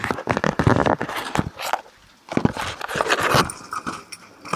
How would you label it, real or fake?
real